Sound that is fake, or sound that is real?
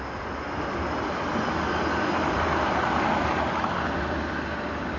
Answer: real